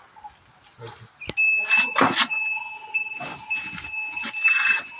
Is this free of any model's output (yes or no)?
yes